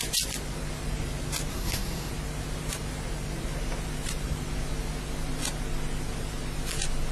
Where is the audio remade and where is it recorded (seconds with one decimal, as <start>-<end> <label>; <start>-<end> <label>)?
0.0-1.5 recorded; 1.5-2.1 remade; 2.1-7.1 recorded